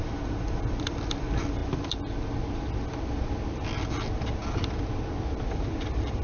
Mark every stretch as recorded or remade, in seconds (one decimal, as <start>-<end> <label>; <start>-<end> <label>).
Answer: 0.0-1.6 remade; 1.6-3.9 recorded; 3.9-4.4 remade; 4.4-5.5 recorded; 5.5-6.2 remade